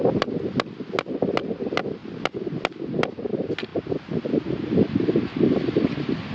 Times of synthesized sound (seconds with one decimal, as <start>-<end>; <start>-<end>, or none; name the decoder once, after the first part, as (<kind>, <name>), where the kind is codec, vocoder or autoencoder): none